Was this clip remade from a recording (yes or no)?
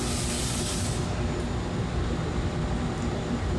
no